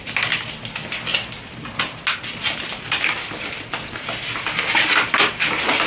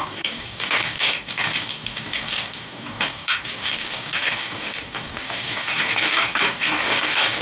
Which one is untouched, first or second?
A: first